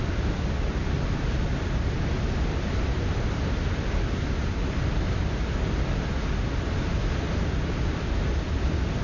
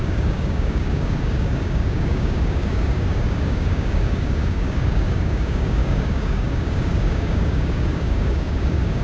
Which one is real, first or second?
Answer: first